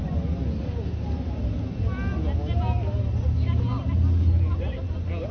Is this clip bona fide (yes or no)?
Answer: yes